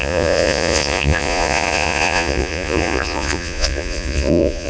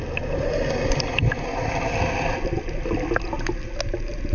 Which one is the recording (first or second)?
second